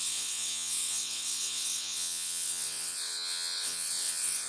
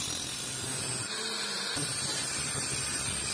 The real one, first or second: second